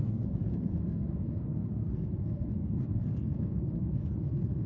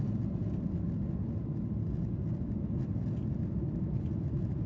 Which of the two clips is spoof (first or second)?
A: first